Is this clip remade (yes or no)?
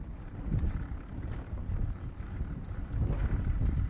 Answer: no